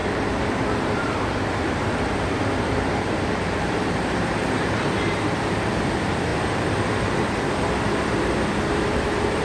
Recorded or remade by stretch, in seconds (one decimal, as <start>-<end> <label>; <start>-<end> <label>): 0.0-9.4 remade